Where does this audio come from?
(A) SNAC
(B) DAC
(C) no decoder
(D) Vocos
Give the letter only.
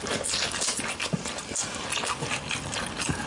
C